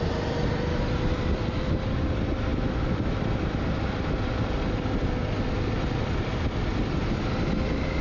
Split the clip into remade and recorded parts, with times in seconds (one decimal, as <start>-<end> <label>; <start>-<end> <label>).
0.0-8.0 recorded